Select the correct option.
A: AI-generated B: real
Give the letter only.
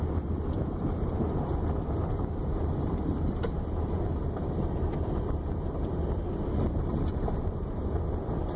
B